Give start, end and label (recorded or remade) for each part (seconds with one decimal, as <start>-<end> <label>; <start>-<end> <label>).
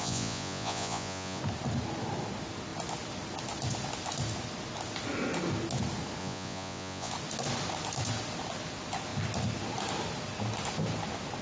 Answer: 0.0-1.4 remade; 1.4-6.2 recorded; 6.2-7.1 remade; 7.1-11.4 recorded